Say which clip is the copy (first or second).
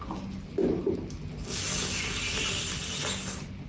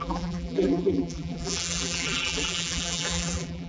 second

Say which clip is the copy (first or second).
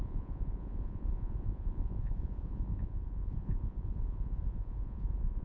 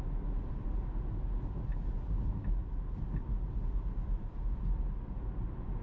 first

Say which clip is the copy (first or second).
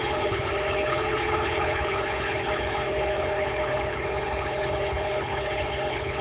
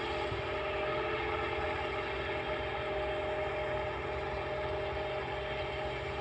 first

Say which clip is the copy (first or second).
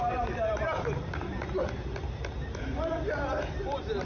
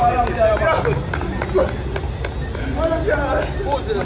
first